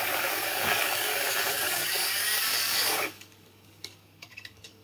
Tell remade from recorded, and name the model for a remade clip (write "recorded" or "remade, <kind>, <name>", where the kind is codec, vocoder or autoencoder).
remade, codec, DAC